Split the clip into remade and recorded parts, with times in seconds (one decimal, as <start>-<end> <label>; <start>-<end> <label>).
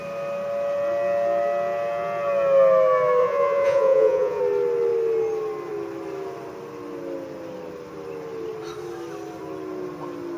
0.0-3.2 recorded; 3.2-4.4 remade; 4.4-10.4 recorded